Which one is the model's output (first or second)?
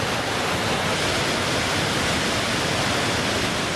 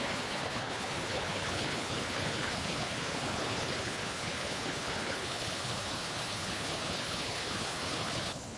second